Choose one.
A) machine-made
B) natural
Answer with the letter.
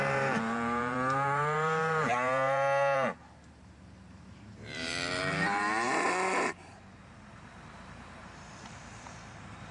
A